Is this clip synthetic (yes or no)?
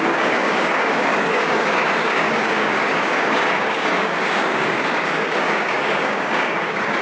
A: yes